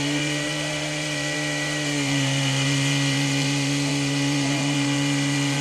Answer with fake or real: fake